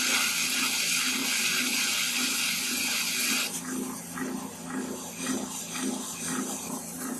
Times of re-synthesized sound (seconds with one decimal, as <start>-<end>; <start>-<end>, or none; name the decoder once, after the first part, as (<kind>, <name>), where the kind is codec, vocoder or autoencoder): 1.2-3.3 (vocoder, Vocos)